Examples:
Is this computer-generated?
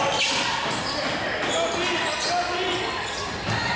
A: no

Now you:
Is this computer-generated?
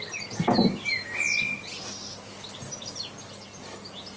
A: no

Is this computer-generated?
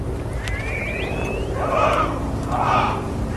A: yes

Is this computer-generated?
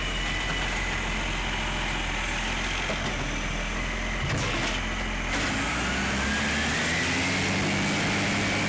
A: no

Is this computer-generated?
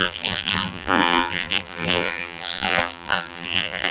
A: yes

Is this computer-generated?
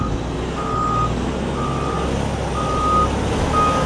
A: no